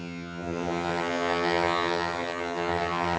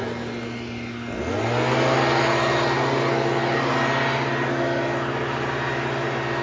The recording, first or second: second